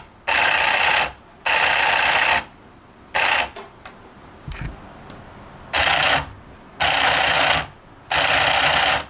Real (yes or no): yes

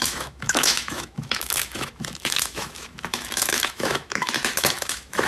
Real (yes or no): no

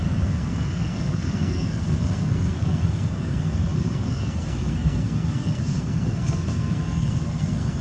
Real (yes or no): no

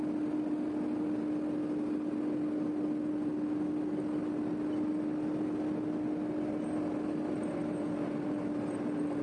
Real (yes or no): yes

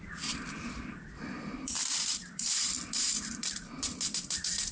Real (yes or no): no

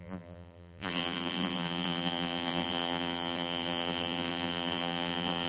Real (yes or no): no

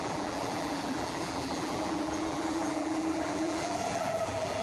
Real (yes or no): no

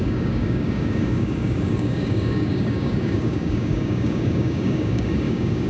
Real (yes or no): no